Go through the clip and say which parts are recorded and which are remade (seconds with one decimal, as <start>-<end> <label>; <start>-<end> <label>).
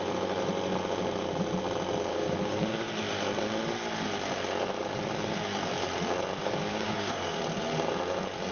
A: 0.0-2.1 recorded; 2.1-2.9 remade; 2.9-6.7 recorded; 6.7-7.4 remade; 7.4-8.5 recorded